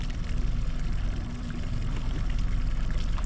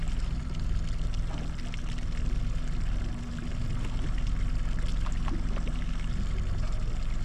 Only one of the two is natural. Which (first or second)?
second